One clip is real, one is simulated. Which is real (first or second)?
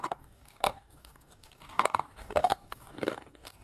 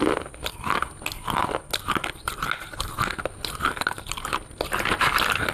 second